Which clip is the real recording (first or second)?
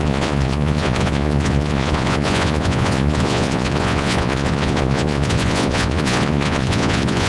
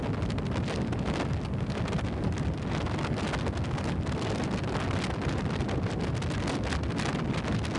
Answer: second